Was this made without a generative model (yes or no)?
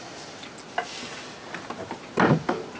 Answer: yes